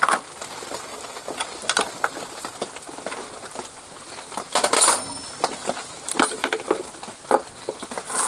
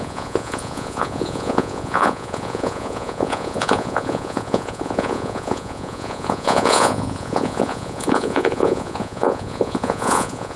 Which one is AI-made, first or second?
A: second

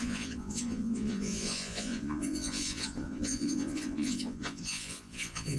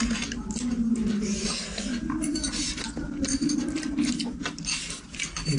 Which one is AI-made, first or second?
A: first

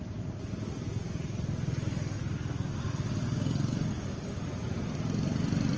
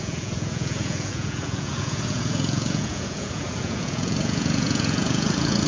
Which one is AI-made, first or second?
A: second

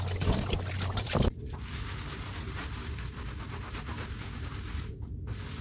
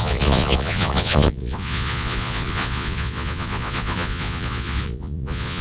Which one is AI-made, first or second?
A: second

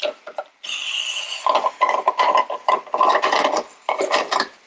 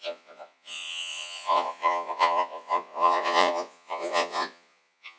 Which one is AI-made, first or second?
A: second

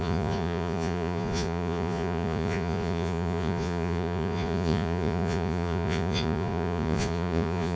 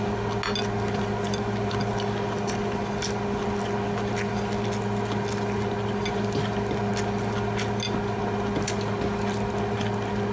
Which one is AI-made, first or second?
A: first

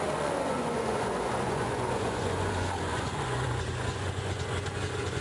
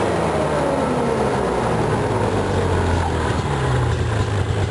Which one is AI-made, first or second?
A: first